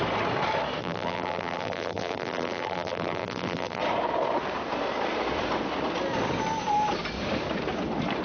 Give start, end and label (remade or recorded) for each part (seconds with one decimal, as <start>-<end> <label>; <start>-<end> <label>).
0.0-0.8 recorded; 0.8-3.8 remade; 3.8-8.2 recorded